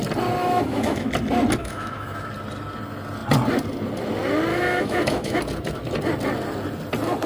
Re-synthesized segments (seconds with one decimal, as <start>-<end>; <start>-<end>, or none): 0.4-1.1; 1.6-2.3; 4.5-5.4